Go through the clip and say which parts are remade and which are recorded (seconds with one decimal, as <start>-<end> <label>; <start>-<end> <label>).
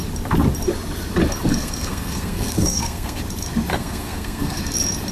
0.0-1.5 recorded; 1.5-3.2 remade; 3.2-3.7 recorded; 3.7-4.6 remade; 4.6-5.1 recorded